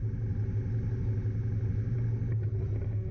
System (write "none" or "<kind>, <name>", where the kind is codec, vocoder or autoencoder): none